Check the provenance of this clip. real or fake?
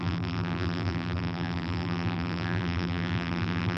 fake